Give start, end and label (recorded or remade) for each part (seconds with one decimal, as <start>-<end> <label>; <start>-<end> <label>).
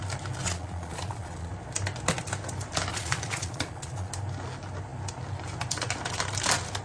0.0-0.4 recorded; 0.4-1.5 remade; 1.5-2.9 recorded; 2.9-4.1 remade; 4.1-6.8 recorded